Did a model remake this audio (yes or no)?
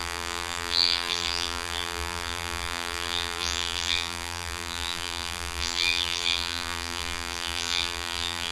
yes